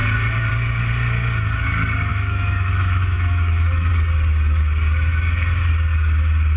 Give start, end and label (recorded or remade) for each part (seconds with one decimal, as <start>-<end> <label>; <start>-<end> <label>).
0.0-2.1 recorded; 2.1-3.9 remade; 3.9-5.1 recorded; 5.1-5.7 remade; 5.7-6.6 recorded